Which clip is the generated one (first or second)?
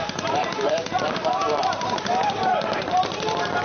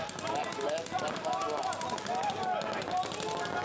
first